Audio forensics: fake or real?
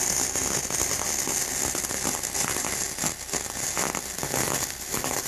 real